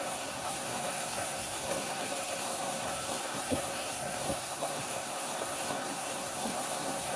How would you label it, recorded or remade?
remade